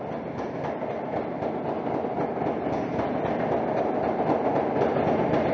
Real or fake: real